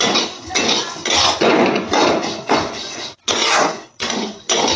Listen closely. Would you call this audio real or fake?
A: fake